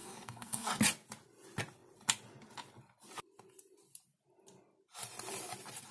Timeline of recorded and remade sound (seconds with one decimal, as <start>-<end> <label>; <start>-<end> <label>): 0.0-0.8 remade; 0.8-5.9 recorded